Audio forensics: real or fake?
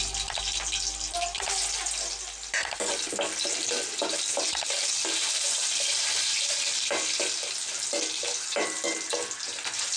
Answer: real